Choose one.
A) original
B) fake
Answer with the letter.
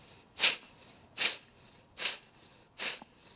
A